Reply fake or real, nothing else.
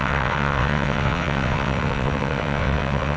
fake